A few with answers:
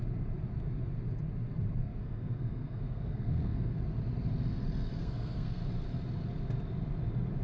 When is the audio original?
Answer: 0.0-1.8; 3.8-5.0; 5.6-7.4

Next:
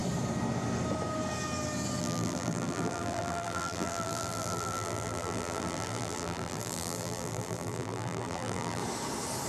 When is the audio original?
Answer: 0.0-2.0; 8.8-9.5

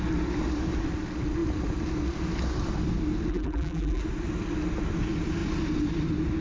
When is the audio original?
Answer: 0.0-3.3; 4.0-6.4

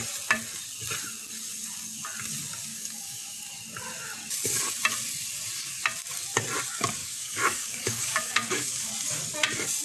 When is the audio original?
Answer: 0.0-2.7; 3.4-7.0; 8.9-9.8

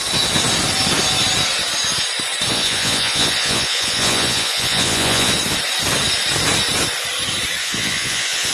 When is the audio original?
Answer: 0.0-2.5; 5.3-7.6

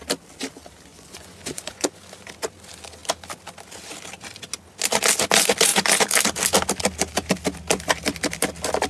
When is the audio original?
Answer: 0.0-0.9; 2.0-8.9